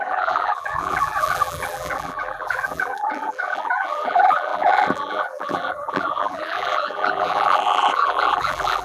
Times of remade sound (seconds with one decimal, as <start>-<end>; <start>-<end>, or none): 0.0-8.8